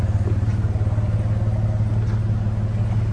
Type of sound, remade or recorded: recorded